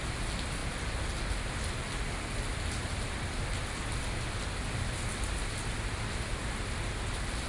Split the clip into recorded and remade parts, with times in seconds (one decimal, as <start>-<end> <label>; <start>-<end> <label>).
0.0-7.5 recorded